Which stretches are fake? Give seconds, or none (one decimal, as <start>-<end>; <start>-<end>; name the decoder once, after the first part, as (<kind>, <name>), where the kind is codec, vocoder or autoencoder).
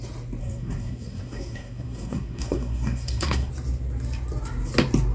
0.4-3.5 (codec, SNAC)